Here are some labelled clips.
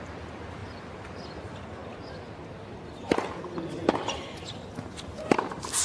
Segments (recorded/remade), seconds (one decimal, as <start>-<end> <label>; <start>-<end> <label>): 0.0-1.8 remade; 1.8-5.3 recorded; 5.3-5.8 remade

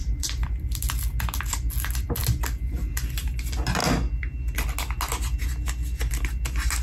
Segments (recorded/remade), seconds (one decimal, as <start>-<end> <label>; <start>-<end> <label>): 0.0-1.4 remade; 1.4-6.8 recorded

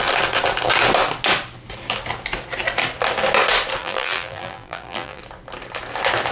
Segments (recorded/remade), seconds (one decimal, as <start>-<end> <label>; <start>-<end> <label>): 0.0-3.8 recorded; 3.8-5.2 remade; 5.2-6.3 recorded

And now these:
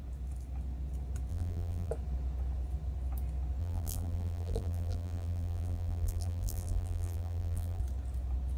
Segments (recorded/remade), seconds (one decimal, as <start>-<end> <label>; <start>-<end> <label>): 0.0-1.3 recorded; 1.3-1.9 remade; 1.9-3.6 recorded; 3.6-7.8 remade; 7.8-8.6 recorded